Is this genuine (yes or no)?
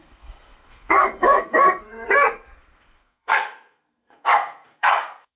no